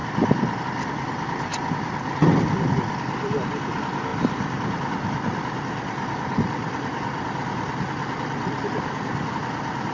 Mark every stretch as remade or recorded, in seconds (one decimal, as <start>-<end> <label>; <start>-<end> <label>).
0.0-9.9 recorded